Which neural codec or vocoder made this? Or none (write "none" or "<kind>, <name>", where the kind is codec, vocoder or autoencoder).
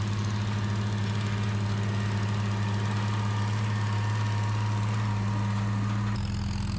none